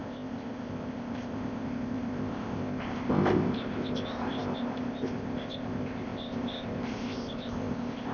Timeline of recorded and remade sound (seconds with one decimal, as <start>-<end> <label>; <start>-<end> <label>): 0.0-8.1 remade